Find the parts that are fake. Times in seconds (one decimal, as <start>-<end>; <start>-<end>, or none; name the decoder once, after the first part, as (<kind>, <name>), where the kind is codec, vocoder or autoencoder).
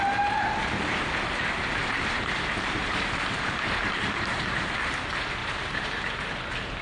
1.8-4.7 (vocoder, BigVGAN v2); 5.4-6.3